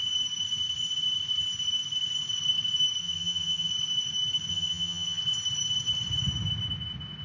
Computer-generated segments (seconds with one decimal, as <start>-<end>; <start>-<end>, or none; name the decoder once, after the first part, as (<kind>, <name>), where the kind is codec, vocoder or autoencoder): 3.0-3.7 (vocoder, HiFi-GAN); 4.5-5.2

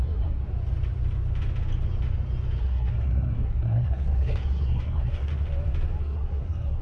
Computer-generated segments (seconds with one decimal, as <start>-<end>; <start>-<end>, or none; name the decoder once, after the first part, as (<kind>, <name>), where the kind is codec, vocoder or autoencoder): 0.0-0.4 (codec, SNAC); 2.6-5.3; 6.0-6.8

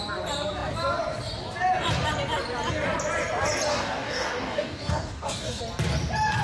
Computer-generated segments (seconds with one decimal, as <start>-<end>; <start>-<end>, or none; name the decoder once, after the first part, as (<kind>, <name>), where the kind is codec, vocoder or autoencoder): 3.7-5.6 (codec, DAC)

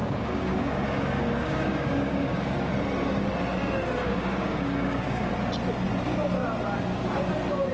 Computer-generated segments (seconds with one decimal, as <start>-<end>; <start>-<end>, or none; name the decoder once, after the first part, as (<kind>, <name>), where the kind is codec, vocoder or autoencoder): 0.0-2.7 (codec, DAC); 4.0-5.3

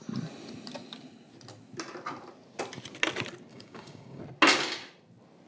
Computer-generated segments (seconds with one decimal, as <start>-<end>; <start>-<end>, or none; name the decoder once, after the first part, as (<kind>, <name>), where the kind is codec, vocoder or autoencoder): 3.5-4.2 (codec, DAC)

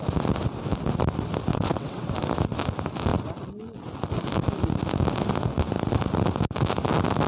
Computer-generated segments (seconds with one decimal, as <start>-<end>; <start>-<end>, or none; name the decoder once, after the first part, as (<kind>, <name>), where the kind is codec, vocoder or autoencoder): 1.5-2.1 (vocoder, WaveNeXt)